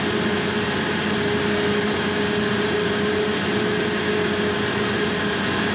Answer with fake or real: real